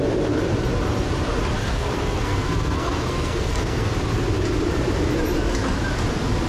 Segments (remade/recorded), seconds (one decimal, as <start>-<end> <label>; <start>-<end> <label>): 0.0-1.6 recorded; 1.6-3.9 remade; 3.9-6.5 recorded